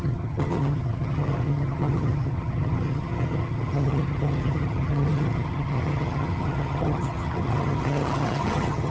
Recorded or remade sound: remade